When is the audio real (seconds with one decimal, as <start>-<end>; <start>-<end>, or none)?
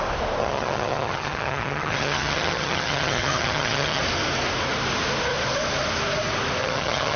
0.0-0.4; 4.0-6.6